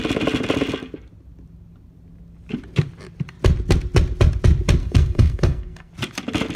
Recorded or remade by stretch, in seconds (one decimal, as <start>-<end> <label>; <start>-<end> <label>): 0.0-4.8 recorded; 4.8-5.9 remade; 5.9-6.6 recorded